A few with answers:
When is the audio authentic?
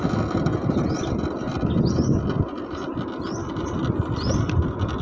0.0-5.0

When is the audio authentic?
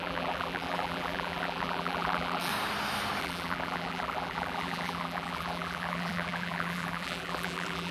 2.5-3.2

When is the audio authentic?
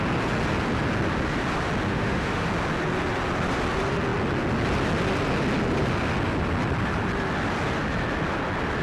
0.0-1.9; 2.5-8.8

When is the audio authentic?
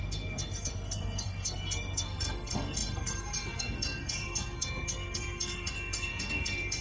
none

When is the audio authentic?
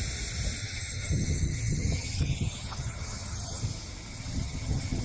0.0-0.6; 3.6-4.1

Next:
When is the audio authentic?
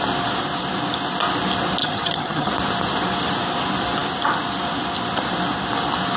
0.0-1.8; 2.5-6.2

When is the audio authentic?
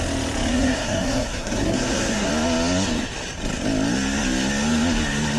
0.0-0.5; 2.3-5.4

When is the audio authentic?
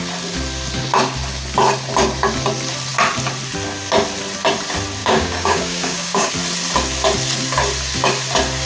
0.0-5.0; 6.3-8.7